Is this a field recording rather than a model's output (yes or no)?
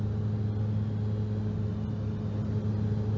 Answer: yes